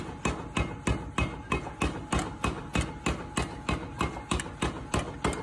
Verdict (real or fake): real